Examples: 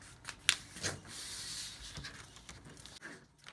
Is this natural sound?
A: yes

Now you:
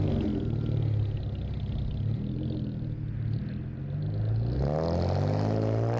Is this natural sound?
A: yes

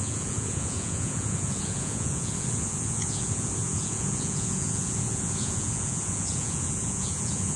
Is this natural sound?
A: no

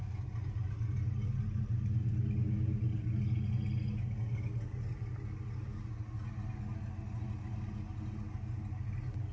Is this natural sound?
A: yes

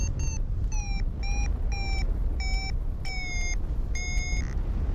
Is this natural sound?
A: yes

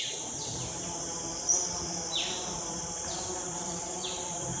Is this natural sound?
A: no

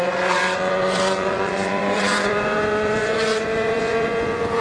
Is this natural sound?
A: no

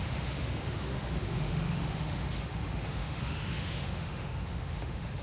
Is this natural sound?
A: no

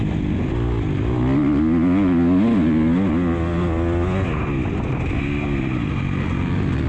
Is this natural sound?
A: yes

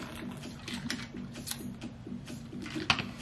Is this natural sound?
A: yes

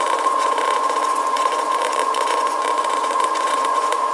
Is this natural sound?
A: no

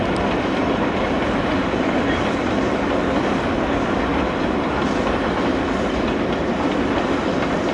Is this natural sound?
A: yes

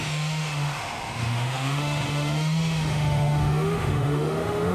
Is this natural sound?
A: no